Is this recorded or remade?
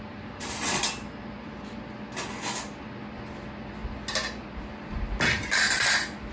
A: recorded